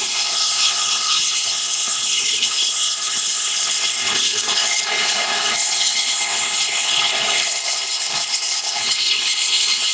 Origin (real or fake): fake